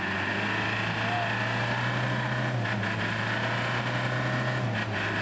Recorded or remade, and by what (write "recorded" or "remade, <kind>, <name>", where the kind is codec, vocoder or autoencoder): recorded